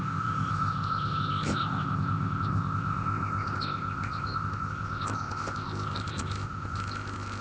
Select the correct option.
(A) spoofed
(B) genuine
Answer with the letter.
A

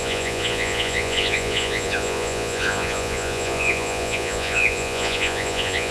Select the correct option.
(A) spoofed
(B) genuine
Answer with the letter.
A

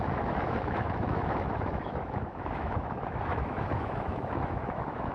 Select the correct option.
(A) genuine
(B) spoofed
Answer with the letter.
B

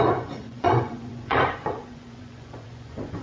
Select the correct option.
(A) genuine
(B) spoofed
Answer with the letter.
B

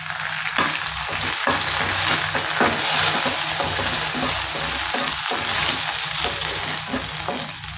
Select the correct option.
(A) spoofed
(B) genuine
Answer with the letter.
B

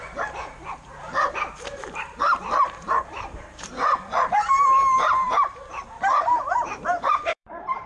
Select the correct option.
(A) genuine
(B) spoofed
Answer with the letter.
B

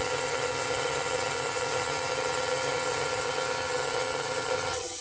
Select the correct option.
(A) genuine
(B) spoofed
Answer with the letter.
B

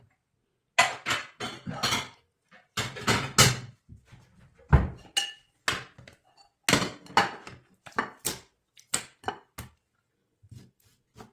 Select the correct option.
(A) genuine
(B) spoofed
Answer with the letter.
A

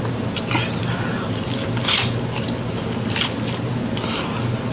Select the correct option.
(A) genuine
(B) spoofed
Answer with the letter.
A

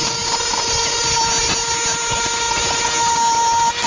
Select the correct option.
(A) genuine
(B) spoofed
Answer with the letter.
A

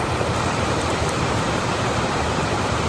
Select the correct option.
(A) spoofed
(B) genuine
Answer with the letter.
A